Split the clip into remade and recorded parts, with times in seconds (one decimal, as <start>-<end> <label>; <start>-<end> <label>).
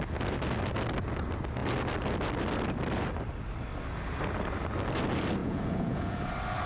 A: 0.0-5.4 recorded; 5.4-6.2 remade; 6.2-6.7 recorded